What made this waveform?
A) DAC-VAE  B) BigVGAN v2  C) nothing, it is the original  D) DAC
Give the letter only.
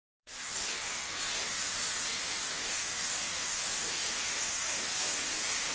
D